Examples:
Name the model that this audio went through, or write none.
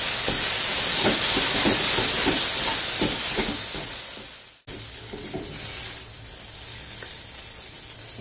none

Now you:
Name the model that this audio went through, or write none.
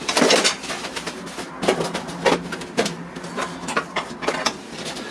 none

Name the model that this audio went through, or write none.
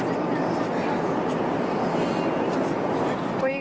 none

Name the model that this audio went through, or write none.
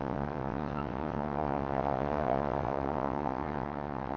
vocoder, WaveNeXt